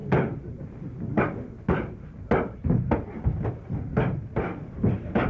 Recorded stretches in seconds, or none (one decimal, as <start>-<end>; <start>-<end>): 0.0-5.3